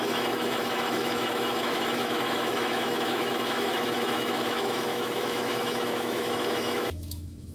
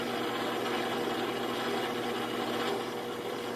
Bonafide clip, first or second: second